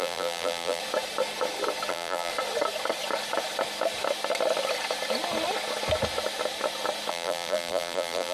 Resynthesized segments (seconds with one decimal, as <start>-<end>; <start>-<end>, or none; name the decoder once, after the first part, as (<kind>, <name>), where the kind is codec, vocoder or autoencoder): 0.0-0.8 (vocoder, BigVGAN v2); 1.9-2.3; 7.1-8.3